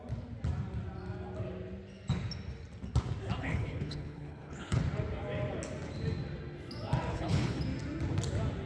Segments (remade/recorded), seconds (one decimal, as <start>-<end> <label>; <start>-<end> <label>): 0.0-3.4 recorded; 3.4-4.8 remade; 4.8-7.1 recorded; 7.1-7.6 remade; 7.6-8.7 recorded